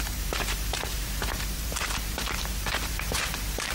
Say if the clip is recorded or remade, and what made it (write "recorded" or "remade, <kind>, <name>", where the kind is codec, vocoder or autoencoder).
remade, vocoder, BigVGAN v2